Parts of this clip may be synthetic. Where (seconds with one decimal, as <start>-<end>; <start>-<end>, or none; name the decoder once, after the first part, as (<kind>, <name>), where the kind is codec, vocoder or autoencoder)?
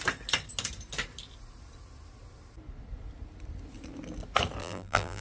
4.6-5.2 (vocoder, BigVGAN v2)